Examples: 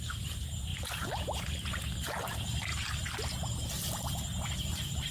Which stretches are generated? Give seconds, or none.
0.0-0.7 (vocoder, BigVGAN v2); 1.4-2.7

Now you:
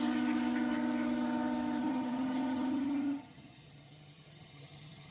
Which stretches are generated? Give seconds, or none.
1.8-5.1 (vocoder, HiFi-GAN)

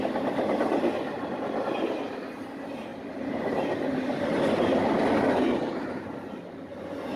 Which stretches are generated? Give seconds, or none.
none

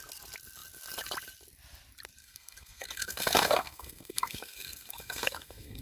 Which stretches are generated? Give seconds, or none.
2.2-5.8 (codec, SNAC)

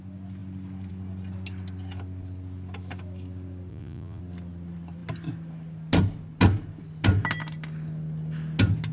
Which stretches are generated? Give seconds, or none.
3.7-4.2 (vocoder, Vocos)

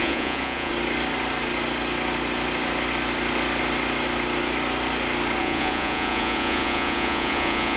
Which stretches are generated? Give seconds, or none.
0.0-0.7 (vocoder, Vocos); 5.4-7.8